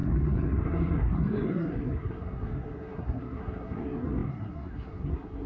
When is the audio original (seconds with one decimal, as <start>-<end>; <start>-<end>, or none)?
none

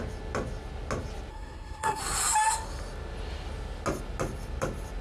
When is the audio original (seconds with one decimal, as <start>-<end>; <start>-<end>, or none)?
0.0-1.3; 2.0-5.0

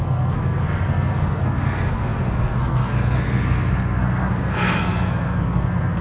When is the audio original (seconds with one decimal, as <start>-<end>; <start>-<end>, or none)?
none

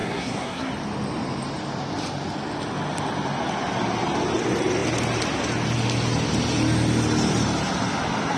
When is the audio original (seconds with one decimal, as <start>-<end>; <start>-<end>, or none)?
0.7-8.4